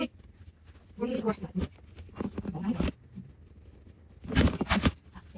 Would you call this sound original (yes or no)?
yes